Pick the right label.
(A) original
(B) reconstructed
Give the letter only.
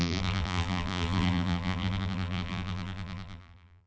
B